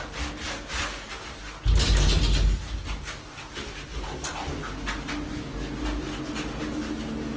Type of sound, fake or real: real